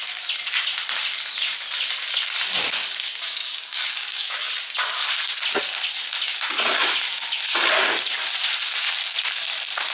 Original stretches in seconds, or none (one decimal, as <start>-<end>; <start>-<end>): 0.0-3.4; 4.5-9.9